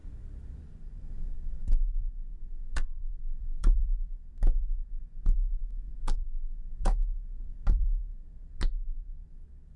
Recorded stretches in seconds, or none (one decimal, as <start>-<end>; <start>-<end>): 0.0-1.3; 5.0-5.6; 8.0-9.8